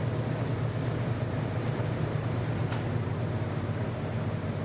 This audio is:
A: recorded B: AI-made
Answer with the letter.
A